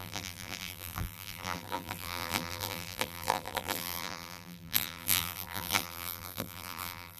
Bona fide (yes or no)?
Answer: no